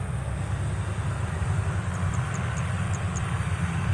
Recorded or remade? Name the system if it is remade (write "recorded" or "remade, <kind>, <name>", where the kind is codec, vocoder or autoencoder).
recorded